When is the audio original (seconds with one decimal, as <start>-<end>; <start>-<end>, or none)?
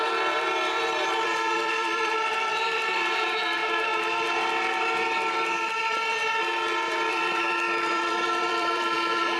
3.6-7.1